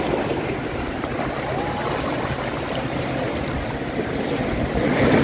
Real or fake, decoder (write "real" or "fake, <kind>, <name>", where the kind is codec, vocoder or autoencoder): fake, vocoder, BigVGAN v2